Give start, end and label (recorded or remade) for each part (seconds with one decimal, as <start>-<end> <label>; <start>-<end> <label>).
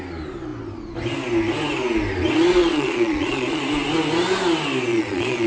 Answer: 0.0-2.6 recorded; 2.6-3.6 remade; 3.6-4.9 recorded; 4.9-5.5 remade